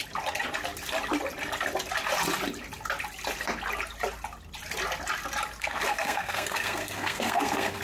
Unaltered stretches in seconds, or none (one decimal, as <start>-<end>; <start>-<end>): 0.0-5.6